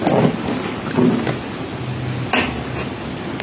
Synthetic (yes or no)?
no